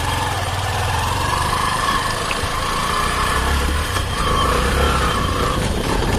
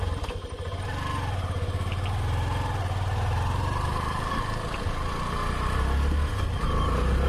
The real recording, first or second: second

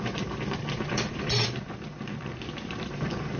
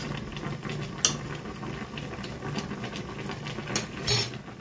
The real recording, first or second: second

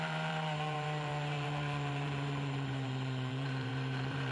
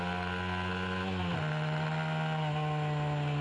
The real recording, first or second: second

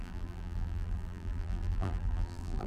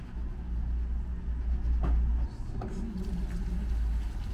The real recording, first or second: second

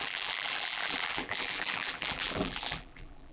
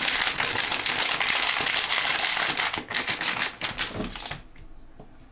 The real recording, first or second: second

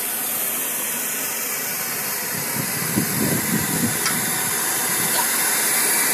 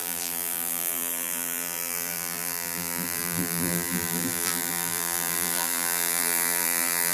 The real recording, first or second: first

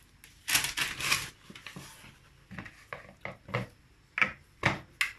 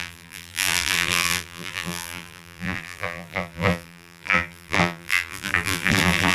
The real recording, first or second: first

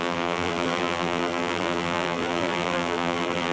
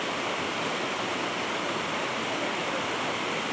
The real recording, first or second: second